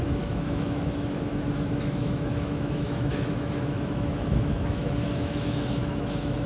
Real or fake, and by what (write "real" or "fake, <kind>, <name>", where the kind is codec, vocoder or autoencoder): fake, autoencoder, DAC-VAE